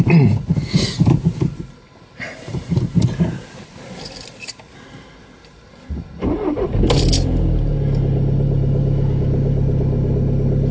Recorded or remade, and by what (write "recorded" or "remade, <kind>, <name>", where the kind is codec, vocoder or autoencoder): recorded